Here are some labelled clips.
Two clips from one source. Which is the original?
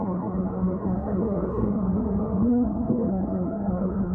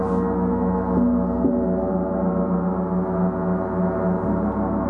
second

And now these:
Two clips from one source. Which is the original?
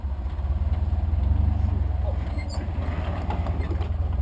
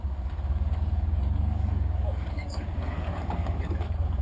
first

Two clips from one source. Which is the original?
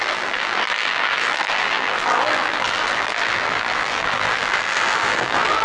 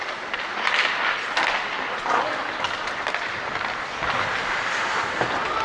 second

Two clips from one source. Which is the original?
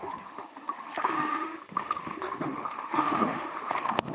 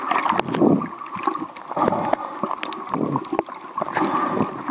second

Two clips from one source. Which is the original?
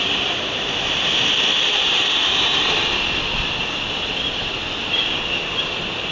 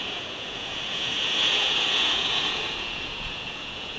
first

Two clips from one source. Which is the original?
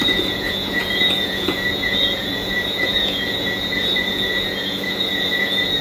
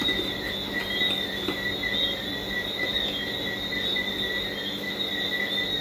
second